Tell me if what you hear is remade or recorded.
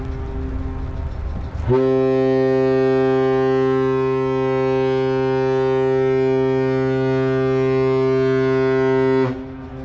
recorded